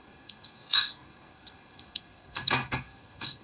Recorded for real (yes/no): no